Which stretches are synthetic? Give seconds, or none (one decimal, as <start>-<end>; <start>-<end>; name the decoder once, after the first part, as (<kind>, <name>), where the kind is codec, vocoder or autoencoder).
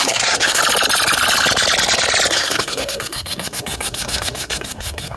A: 0.0-0.6 (codec, SNAC); 2.3-5.2